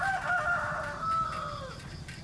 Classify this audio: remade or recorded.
recorded